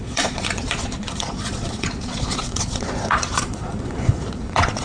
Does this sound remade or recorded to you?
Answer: remade